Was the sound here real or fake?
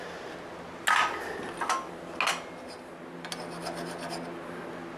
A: real